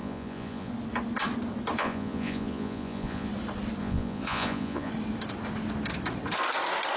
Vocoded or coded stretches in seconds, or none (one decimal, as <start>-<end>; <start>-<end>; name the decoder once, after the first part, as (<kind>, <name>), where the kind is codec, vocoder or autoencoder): 0.0-0.7 (vocoder, Vocos); 1.8-3.3; 3.8-4.9